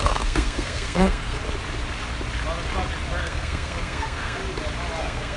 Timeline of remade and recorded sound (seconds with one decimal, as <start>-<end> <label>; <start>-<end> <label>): 0.0-1.4 remade; 1.4-3.2 recorded; 3.2-4.4 remade; 4.4-5.0 recorded; 5.0-5.4 remade